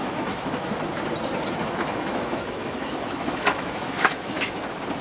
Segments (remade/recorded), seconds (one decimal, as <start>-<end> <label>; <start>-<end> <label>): 0.0-0.7 remade; 0.7-1.6 recorded; 1.6-4.6 remade; 4.6-5.0 recorded